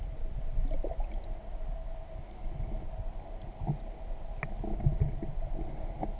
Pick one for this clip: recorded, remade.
recorded